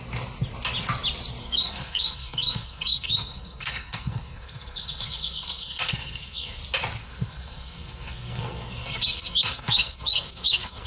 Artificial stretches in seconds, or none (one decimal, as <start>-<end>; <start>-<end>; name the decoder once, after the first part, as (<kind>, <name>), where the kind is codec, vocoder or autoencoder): 1.4-6.6 (codec, SNAC); 7.0-10.9